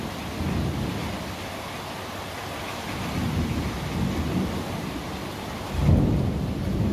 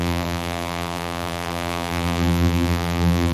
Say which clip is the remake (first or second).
second